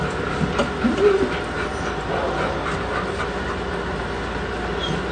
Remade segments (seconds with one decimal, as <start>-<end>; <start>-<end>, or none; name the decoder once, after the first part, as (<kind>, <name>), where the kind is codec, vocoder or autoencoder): none